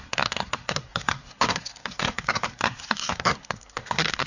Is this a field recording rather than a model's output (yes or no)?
no